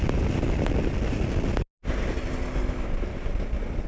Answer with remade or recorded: recorded